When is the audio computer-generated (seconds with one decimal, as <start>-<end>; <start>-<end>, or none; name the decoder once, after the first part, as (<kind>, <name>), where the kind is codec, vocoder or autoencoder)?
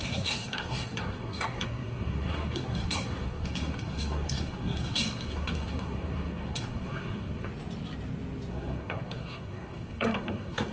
0.0-7.5 (codec, SNAC); 8.5-10.7